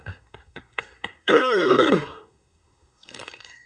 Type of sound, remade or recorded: remade